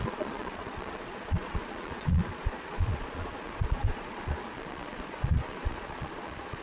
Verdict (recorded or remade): remade